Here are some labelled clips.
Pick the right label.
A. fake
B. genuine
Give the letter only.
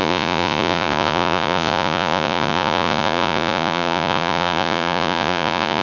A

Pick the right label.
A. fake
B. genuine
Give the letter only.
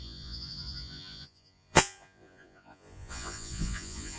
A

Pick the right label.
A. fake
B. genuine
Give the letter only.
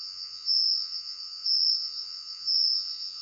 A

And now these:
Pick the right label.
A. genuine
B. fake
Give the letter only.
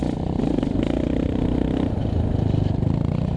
A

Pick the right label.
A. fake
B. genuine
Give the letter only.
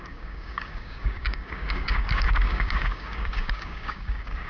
A